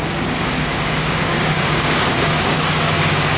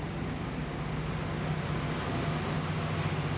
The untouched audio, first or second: second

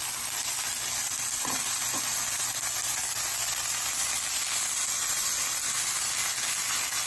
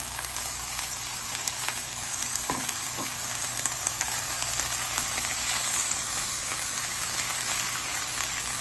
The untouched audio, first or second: first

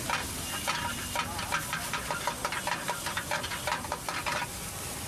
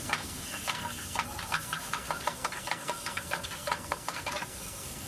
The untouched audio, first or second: first